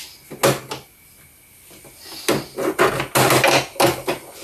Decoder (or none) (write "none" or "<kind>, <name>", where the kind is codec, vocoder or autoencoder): none